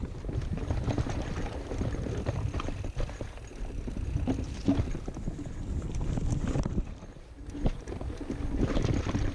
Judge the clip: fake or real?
real